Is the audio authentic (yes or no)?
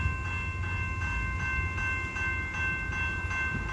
yes